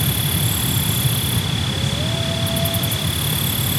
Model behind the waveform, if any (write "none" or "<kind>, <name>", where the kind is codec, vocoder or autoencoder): none